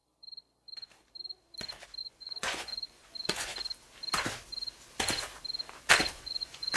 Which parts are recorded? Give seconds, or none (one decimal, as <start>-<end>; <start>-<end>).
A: 0.0-2.0; 3.5-6.1